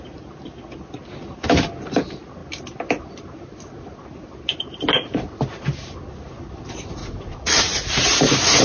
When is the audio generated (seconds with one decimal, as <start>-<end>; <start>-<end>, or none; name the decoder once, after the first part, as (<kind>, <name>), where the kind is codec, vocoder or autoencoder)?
7.0-7.8 (vocoder, Vocos)